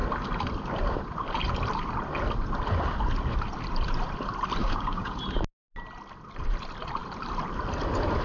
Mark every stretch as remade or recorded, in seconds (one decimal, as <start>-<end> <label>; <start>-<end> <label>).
0.0-4.6 recorded; 4.6-5.1 remade; 5.1-8.2 recorded